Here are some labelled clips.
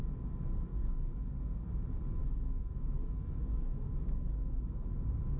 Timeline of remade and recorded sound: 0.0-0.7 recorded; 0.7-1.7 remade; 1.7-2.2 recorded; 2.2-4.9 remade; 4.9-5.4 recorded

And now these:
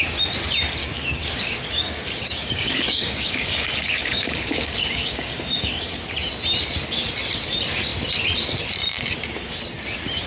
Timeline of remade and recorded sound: 0.0-0.8 recorded; 0.8-6.0 remade; 6.0-10.3 recorded

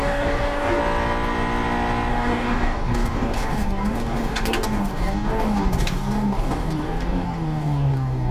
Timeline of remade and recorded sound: 0.0-0.8 remade; 0.8-2.1 recorded; 2.1-8.3 remade

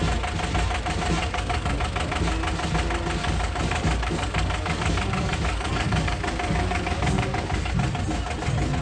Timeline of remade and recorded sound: 0.0-1.2 recorded; 1.2-1.8 remade; 1.8-3.2 recorded; 3.2-7.7 remade; 7.7-8.8 recorded

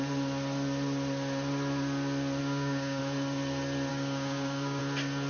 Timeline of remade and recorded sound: 0.0-2.4 recorded; 2.4-3.0 remade; 3.0-3.9 recorded; 3.9-4.8 remade; 4.8-5.3 recorded

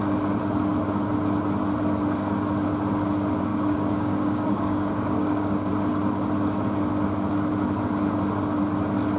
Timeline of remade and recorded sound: 0.0-3.5 recorded; 3.5-5.7 remade; 5.7-9.2 recorded